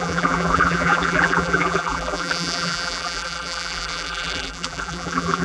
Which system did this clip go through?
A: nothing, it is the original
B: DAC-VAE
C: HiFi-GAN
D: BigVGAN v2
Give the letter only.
D